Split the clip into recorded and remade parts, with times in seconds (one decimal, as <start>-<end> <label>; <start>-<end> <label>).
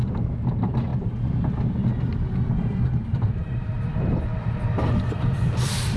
0.0-0.5 recorded; 0.5-0.9 remade; 0.9-2.6 recorded; 2.6-4.3 remade; 4.3-5.2 recorded; 5.2-6.0 remade